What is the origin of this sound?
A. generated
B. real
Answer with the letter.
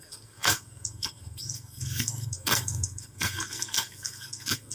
A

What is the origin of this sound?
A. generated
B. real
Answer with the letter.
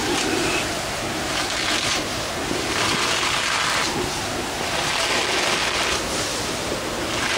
B